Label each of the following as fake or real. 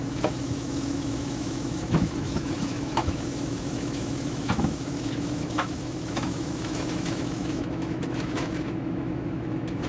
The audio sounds fake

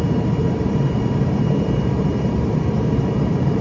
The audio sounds fake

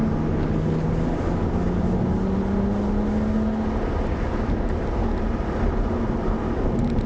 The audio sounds real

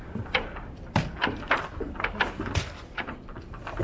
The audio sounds real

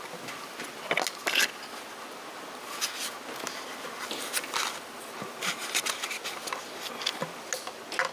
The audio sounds real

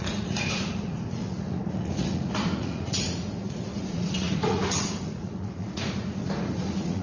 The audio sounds fake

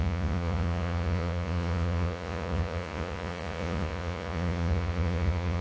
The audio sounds fake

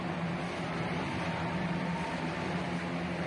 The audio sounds real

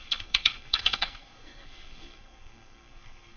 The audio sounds fake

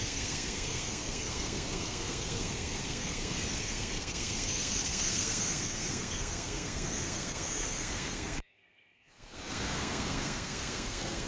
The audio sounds fake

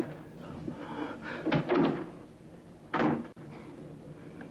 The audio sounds real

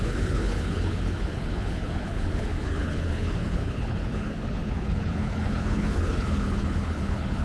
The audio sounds fake